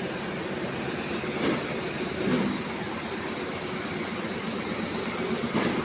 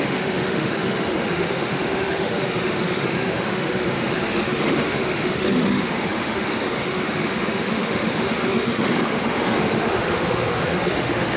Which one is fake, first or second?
second